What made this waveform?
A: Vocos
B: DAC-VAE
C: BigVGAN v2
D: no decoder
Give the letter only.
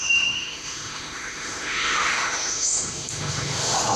B